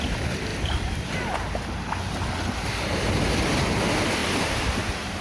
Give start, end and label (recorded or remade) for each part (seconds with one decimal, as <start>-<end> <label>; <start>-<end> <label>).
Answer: 0.0-5.2 recorded